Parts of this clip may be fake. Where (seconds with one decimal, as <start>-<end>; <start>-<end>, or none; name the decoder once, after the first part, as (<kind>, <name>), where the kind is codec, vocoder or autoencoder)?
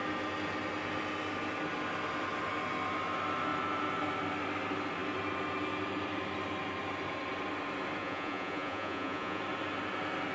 8.0-9.4 (vocoder, Vocos)